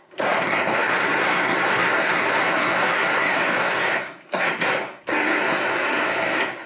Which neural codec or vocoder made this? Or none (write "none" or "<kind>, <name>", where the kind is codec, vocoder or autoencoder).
codec, SNAC